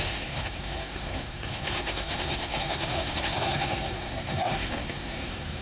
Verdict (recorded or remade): remade